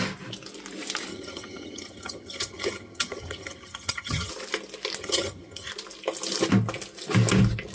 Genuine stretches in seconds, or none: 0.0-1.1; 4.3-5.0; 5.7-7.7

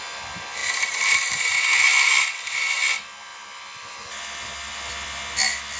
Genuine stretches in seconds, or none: 0.0-0.6; 1.5-3.3

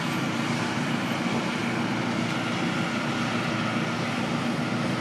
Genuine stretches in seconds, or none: 1.6-4.6

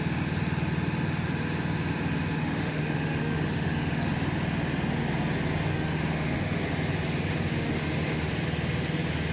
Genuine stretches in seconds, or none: 0.0-2.4; 4.1-5.7; 6.6-7.5; 8.3-9.3

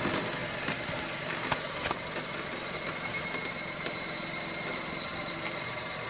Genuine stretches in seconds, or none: 0.0-5.1